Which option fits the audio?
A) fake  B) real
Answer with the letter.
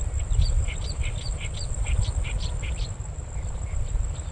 B